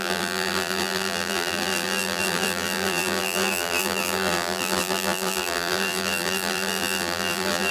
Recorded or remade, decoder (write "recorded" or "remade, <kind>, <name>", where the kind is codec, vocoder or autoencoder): remade, vocoder, BigVGAN v2